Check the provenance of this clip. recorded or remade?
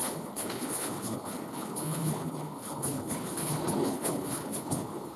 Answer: remade